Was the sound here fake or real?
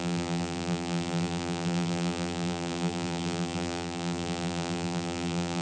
fake